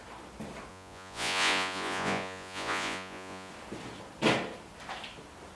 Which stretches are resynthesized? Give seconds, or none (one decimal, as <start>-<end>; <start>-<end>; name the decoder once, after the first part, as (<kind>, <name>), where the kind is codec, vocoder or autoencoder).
0.7-3.5 (vocoder, Vocos)